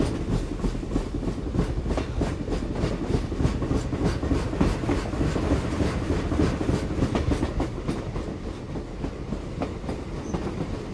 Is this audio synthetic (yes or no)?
no